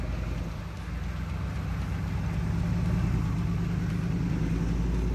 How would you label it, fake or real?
real